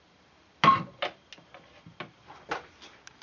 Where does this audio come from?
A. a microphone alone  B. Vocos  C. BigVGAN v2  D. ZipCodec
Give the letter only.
A